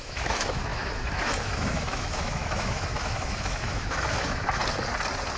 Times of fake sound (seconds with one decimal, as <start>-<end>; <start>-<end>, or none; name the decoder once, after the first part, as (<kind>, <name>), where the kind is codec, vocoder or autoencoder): 0.0-4.6 (autoencoder, DAC-VAE)